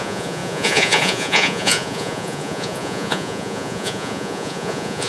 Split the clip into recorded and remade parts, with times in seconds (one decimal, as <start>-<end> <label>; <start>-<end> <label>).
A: 0.0-5.1 remade